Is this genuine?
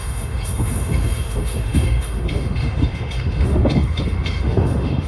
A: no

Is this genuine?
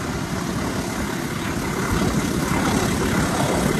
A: yes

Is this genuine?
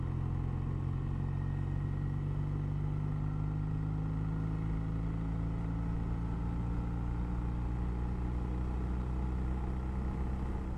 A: yes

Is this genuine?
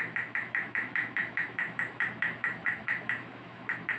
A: no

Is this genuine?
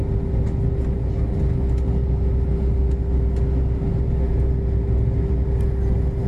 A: yes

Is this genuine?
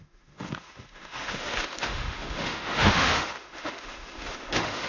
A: no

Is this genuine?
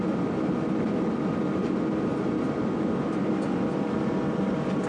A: yes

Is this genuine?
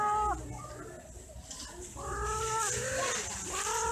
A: yes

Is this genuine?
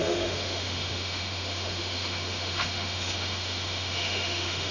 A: no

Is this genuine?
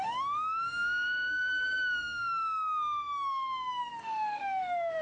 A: no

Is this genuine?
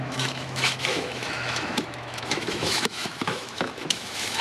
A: no